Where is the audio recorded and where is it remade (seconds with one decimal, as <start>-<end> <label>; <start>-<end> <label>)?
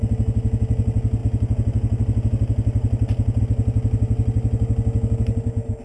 0.0-5.8 recorded